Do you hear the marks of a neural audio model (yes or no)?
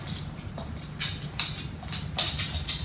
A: no